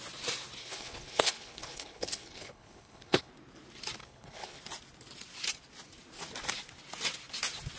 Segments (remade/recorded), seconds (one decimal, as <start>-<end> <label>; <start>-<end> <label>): 0.0-0.6 recorded; 0.6-3.3 remade; 3.3-4.0 recorded; 4.0-4.6 remade; 4.6-7.8 recorded